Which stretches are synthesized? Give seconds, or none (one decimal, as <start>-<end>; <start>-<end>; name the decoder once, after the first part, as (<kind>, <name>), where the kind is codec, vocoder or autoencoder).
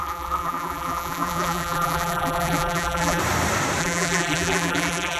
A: 0.0-3.2 (vocoder, BigVGAN v2); 3.8-5.2